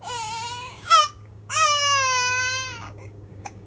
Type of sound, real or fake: fake